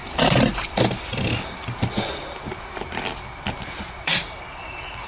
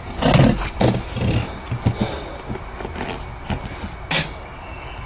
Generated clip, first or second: first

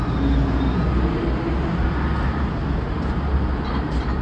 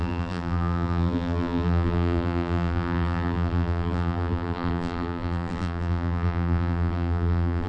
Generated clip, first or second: second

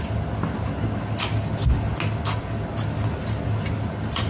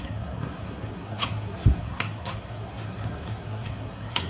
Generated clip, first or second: second